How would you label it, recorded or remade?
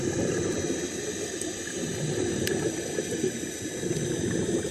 recorded